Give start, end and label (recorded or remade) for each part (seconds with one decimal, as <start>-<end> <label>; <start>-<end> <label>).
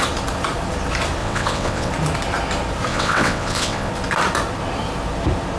0.0-1.2 recorded; 1.2-1.9 remade; 1.9-2.9 recorded; 2.9-3.9 remade; 3.9-5.6 recorded